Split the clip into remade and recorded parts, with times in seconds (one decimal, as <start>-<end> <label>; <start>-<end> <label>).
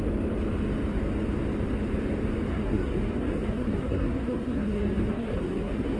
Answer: 0.0-2.5 recorded; 2.5-6.0 remade